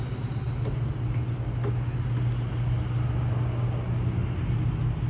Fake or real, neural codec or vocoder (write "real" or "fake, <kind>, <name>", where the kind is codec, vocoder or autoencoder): real